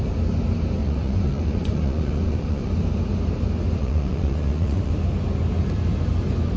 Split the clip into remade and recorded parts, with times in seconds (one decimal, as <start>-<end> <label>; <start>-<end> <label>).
0.0-0.8 recorded; 0.8-2.7 remade; 2.7-3.8 recorded; 3.8-4.9 remade; 4.9-6.6 recorded